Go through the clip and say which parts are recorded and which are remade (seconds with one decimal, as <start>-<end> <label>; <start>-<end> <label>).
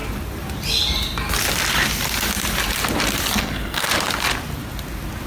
0.0-3.4 recorded; 3.4-3.9 remade; 3.9-5.3 recorded